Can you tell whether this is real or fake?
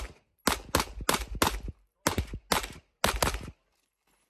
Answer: real